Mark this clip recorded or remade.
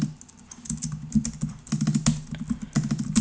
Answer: recorded